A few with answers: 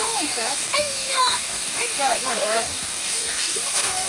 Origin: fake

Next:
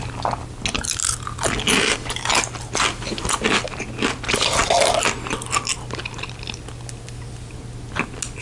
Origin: real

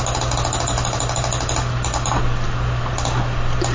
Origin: real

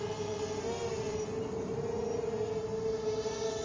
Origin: real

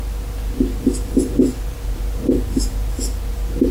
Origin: real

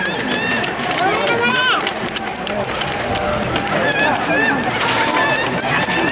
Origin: real